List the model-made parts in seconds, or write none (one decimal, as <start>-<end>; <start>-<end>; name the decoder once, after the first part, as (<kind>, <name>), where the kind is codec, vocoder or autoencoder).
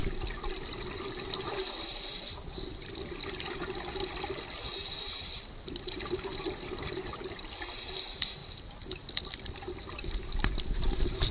none